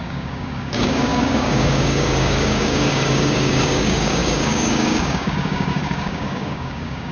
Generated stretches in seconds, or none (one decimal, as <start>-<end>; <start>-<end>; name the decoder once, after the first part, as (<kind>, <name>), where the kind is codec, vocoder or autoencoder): 0.0-7.1 (codec, DAC)